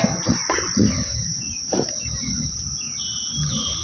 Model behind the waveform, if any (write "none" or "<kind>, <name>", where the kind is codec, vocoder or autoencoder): none